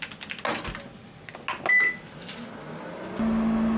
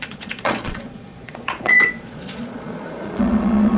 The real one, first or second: first